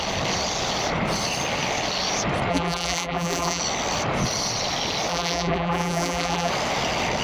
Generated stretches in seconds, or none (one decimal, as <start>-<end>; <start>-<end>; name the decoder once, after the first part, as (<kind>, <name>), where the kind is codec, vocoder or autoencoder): 2.5-3.6 (vocoder, BigVGAN v2); 5.1-6.5